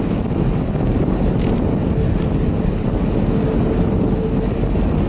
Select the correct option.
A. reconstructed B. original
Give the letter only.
B